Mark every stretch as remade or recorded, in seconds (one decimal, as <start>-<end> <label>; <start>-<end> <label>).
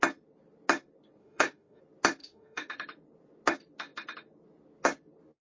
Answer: 0.0-1.2 recorded; 1.2-1.8 remade; 1.8-2.2 recorded; 2.2-2.7 remade; 2.7-5.4 recorded